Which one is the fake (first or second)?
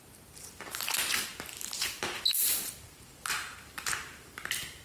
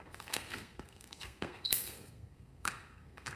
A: second